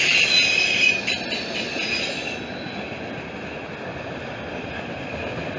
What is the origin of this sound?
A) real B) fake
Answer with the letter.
A